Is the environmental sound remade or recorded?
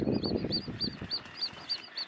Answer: recorded